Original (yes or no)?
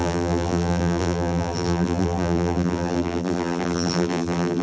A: no